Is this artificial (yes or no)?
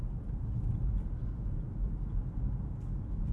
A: no